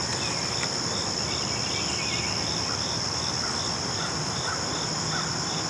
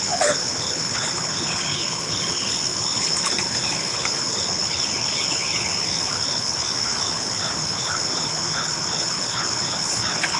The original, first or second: first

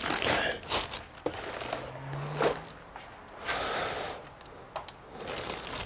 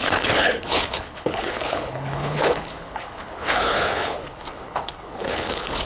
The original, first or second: first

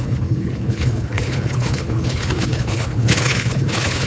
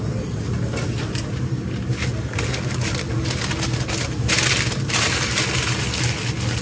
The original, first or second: second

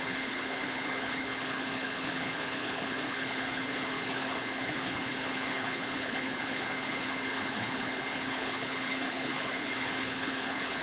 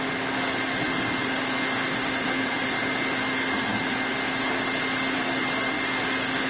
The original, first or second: second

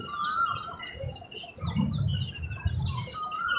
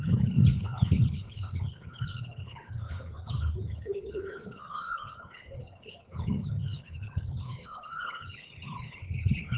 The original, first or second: first